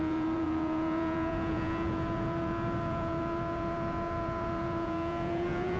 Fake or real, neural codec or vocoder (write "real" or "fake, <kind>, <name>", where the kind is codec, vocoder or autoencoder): fake, vocoder, Vocos